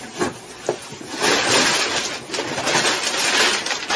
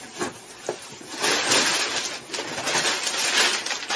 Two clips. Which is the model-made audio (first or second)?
first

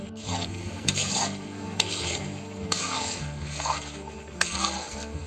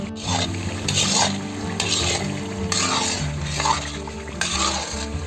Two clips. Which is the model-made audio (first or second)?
first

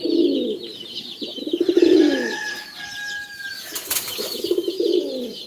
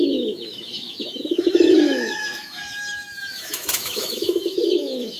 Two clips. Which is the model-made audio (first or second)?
second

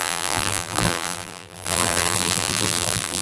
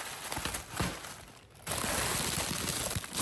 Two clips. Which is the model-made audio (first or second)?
first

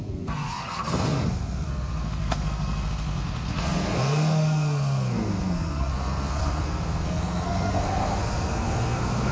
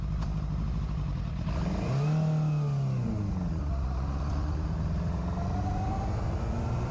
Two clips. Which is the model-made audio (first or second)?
first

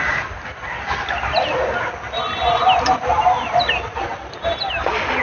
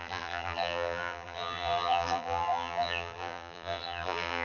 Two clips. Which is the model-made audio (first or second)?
second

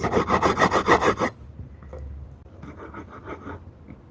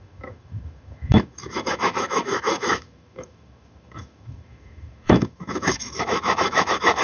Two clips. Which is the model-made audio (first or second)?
second